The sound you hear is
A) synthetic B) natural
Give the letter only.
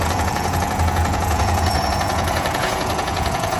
A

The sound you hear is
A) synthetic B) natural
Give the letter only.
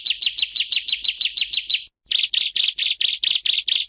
B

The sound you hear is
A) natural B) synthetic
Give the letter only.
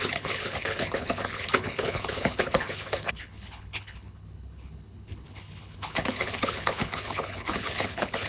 B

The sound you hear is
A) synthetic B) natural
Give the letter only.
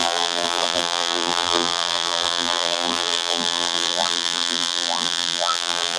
A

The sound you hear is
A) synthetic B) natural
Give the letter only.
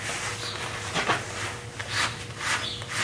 B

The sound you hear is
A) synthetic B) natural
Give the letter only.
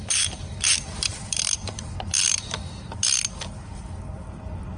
A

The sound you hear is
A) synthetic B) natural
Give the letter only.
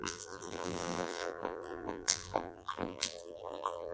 A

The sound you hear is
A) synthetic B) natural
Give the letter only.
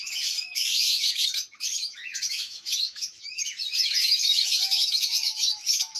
A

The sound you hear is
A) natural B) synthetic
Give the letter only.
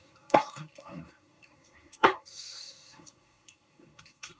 B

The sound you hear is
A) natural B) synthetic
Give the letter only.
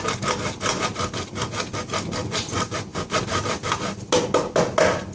A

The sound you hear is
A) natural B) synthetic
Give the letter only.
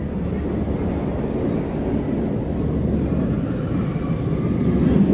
A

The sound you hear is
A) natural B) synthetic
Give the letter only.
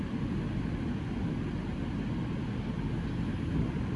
A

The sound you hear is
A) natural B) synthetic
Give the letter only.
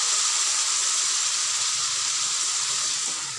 A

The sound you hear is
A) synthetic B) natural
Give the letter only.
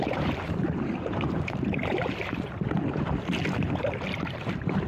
A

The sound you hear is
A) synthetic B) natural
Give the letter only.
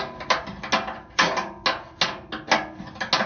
B